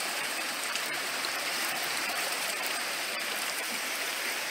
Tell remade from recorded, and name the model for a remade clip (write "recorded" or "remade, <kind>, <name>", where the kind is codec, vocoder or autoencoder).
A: remade, vocoder, BigVGAN v2